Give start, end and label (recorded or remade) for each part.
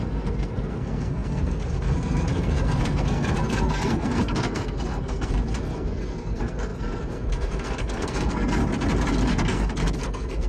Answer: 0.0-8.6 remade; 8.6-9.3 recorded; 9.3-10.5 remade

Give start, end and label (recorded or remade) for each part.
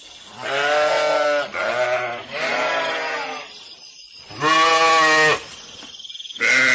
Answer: 0.0-6.7 recorded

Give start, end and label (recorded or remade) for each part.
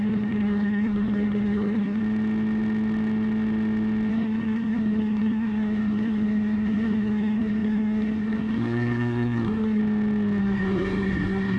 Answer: 0.0-2.0 remade; 2.0-4.1 recorded; 4.1-9.8 remade; 9.8-10.4 recorded; 10.4-11.6 remade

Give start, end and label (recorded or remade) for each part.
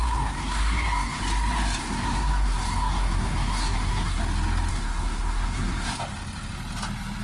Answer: 0.0-1.2 remade; 1.2-1.8 recorded; 1.8-4.2 remade; 4.2-4.7 recorded; 4.7-6.0 remade; 6.0-7.2 recorded